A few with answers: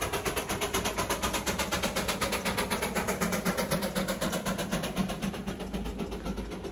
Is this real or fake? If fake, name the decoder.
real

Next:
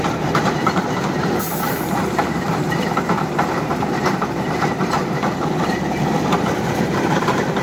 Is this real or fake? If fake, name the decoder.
fake, vocoder, BigVGAN v2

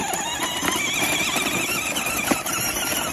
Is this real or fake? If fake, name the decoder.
real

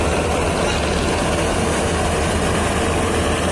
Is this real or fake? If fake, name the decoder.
real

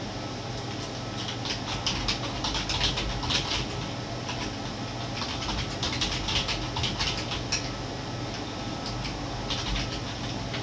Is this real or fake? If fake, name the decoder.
real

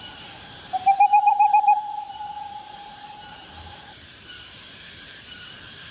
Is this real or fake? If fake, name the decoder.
fake, vocoder, BigVGAN v2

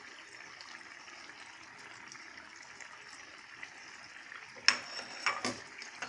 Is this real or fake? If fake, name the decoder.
real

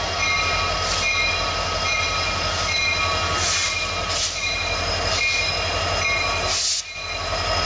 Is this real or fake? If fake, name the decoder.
real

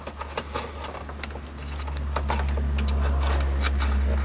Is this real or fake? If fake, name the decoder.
real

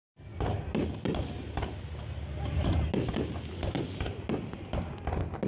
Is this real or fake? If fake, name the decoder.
real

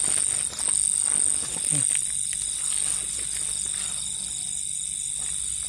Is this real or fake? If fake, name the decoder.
real